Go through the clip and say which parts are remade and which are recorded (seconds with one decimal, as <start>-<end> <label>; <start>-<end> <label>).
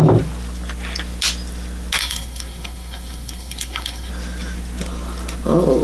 0.0-2.0 recorded; 2.0-4.1 remade; 4.1-5.8 recorded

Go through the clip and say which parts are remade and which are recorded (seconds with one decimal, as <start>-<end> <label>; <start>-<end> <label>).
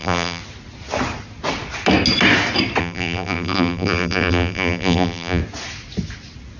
0.0-0.4 remade; 0.4-2.8 recorded; 2.8-5.4 remade; 5.4-6.6 recorded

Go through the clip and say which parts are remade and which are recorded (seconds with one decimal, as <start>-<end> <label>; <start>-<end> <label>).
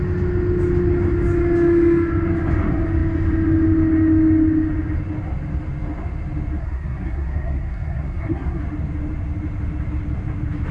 0.0-6.6 recorded; 6.6-8.6 remade; 8.6-10.7 recorded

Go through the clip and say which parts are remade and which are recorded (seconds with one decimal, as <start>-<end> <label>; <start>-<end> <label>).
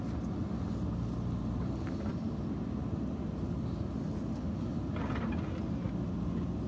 0.0-6.7 recorded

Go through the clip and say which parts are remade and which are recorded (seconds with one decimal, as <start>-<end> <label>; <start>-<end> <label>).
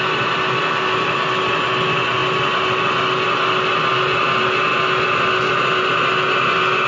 0.0-6.9 recorded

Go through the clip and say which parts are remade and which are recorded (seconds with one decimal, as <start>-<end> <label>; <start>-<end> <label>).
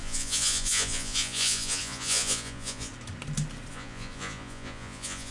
0.0-2.9 remade; 2.9-3.7 recorded; 3.7-5.3 remade